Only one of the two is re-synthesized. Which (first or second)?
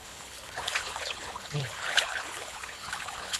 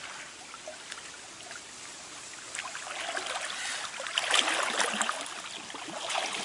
first